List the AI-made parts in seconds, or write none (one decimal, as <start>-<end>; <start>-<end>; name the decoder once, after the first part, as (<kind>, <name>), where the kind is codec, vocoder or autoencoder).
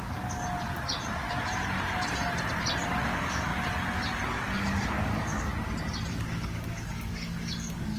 0.0-0.4 (codec, DAC); 3.0-3.5; 4.3-5.5; 6.1-8.0